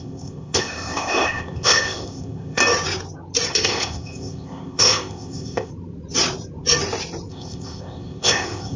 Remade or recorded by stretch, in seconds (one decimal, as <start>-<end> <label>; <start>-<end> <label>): 0.0-2.6 remade; 2.6-3.5 recorded; 3.5-5.7 remade; 5.7-7.3 recorded; 7.3-8.8 remade